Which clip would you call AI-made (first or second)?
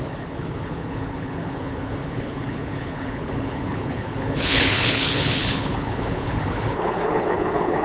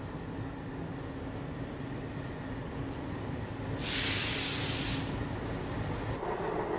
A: first